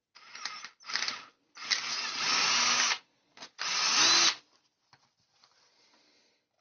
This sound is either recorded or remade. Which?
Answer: recorded